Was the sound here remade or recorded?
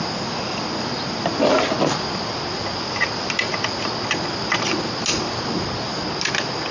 recorded